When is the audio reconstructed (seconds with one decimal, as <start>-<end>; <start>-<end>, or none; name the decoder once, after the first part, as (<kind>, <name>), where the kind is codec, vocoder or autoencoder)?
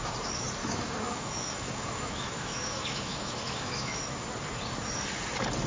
0.6-4.0 (autoencoder, DAC-VAE)